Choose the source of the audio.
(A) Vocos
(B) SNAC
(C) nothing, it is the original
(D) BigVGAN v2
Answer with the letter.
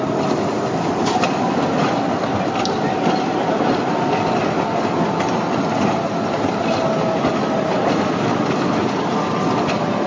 C